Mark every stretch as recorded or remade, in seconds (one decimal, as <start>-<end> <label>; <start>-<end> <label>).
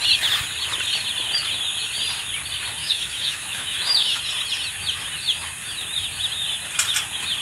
0.0-2.8 recorded; 2.8-4.2 remade; 4.2-7.4 recorded